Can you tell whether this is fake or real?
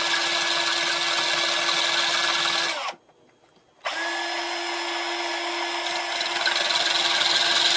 real